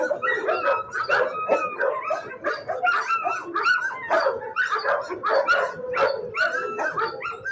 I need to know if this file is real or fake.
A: real